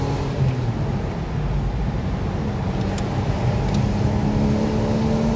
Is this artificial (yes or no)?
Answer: no